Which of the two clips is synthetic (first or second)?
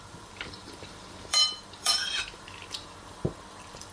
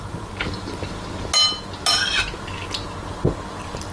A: first